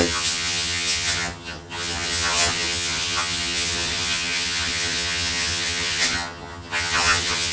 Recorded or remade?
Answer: remade